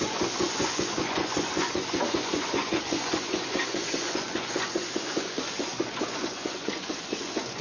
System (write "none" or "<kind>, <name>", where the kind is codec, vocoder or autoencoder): vocoder, Vocos